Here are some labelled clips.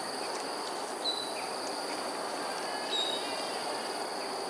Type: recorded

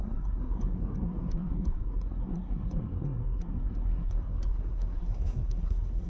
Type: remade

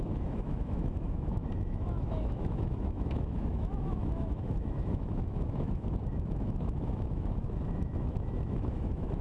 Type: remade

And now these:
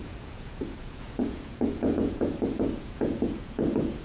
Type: remade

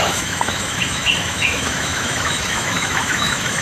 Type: remade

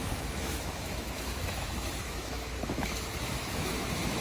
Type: remade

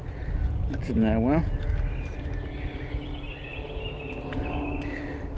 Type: recorded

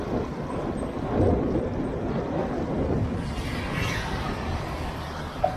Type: recorded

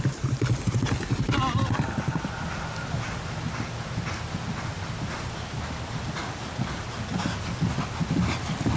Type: recorded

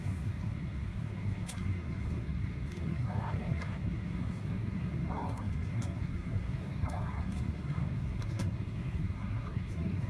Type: remade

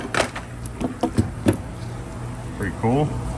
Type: recorded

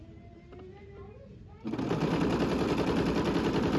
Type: recorded